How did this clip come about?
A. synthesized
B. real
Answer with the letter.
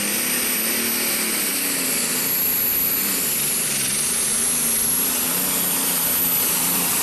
B